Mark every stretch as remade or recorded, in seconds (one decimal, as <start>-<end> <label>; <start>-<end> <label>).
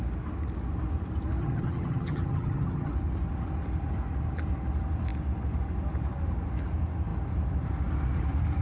0.0-1.4 recorded; 1.4-2.9 remade; 2.9-8.6 recorded